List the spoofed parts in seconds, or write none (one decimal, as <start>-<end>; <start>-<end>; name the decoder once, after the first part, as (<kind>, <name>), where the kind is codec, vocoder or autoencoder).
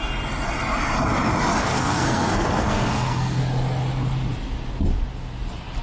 1.6-3.4 (codec, SNAC)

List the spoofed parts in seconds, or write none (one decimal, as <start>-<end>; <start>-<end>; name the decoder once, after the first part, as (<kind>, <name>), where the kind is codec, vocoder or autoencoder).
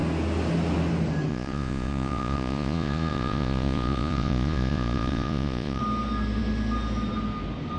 1.3-5.8 (vocoder, Vocos)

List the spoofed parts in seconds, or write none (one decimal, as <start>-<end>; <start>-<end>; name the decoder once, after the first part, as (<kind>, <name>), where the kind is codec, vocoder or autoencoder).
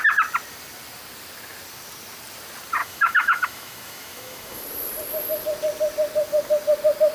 2.8-4.6 (autoencoder, DAC-VAE)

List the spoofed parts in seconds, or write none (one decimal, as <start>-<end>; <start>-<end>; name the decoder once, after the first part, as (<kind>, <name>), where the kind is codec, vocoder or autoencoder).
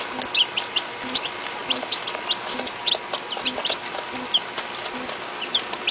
none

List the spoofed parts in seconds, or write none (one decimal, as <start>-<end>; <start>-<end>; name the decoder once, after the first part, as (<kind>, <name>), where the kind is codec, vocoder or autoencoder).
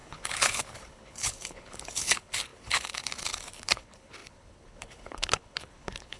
0.0-6.2 (codec, HILCodec)